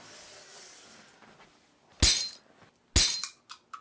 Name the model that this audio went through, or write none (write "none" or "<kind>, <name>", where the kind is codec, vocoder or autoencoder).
none